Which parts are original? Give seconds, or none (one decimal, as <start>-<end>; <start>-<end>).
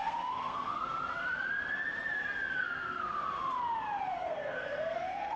0.9-2.6; 3.4-4.1